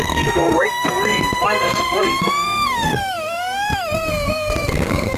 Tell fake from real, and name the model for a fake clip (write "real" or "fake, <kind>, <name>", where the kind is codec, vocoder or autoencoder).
fake, codec, SNAC